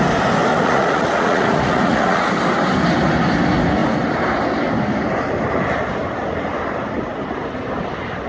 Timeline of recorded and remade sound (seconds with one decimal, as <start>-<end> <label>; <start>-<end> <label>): 0.0-0.5 recorded; 0.5-2.3 remade; 2.3-8.3 recorded